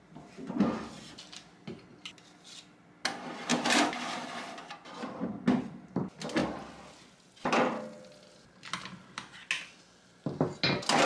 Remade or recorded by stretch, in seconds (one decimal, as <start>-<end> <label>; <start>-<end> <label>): 0.0-3.5 recorded; 3.5-4.6 remade; 4.6-6.4 recorded; 6.4-7.4 remade; 7.4-11.1 recorded